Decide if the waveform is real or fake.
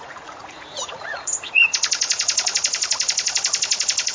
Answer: fake